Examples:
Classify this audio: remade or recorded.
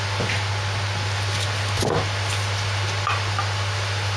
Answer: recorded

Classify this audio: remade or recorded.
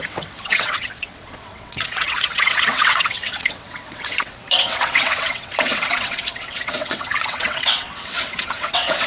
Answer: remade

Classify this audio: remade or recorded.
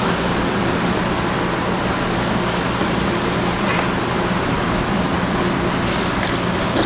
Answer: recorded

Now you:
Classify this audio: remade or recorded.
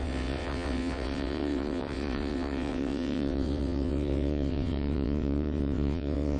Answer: remade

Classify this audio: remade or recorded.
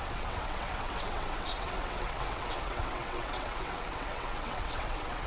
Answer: remade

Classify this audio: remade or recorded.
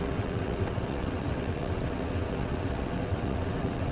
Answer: remade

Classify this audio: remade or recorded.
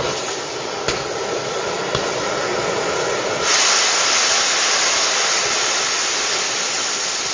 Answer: recorded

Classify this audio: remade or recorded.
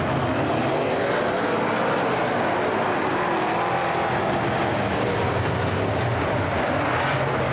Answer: recorded